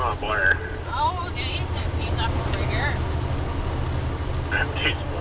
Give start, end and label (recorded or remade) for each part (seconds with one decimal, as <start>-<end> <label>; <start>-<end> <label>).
0.0-5.2 recorded